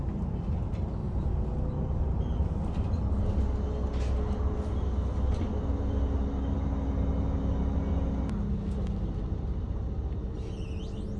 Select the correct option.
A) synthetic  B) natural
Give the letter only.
B